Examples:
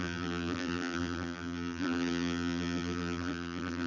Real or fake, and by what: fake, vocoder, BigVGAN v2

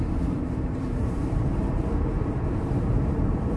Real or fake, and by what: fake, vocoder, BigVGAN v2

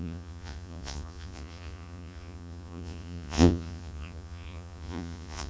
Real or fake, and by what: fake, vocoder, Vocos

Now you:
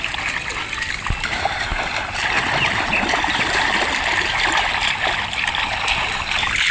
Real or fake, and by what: real